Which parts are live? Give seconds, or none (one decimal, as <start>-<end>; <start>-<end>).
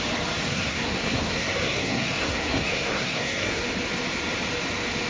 0.0-0.5; 3.6-5.1